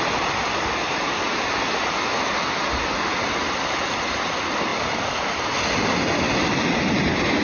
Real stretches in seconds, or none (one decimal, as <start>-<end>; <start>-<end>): 0.0-4.7